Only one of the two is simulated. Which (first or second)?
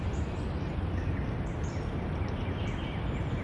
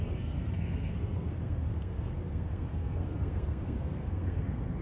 second